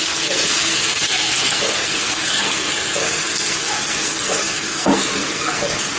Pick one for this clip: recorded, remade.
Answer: remade